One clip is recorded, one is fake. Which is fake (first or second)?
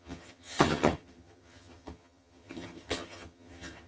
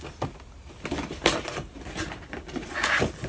first